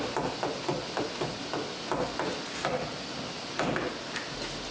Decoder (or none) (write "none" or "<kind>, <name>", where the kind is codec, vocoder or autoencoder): none